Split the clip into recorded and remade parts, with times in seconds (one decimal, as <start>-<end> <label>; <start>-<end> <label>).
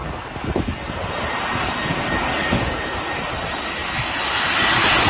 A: 0.0-5.1 recorded